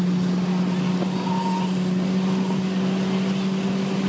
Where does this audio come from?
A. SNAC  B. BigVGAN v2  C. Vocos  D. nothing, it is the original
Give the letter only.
D